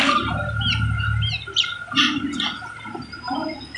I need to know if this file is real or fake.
real